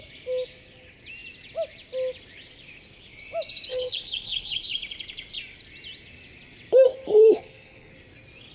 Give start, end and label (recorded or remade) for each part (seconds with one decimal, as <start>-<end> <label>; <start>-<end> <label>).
0.0-3.7 recorded; 3.7-4.6 remade; 4.6-6.9 recorded; 6.9-7.9 remade; 7.9-8.5 recorded